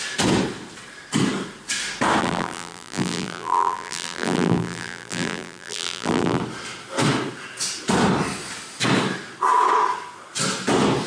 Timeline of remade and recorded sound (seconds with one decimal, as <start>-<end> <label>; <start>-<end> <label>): 0.0-2.2 recorded; 2.2-6.4 remade; 6.4-11.1 recorded